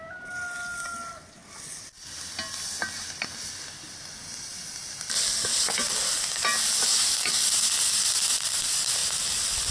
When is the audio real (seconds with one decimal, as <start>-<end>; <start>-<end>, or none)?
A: 0.0-9.7